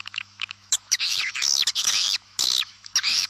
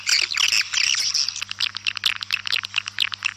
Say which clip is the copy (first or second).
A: first